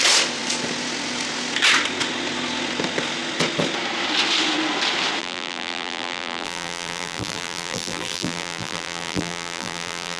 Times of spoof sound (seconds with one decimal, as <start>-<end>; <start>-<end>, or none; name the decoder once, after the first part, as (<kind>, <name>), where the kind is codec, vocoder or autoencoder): 5.2-10.2 (vocoder, BigVGAN v2)